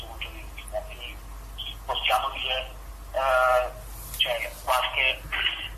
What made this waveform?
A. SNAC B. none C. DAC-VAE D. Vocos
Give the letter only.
B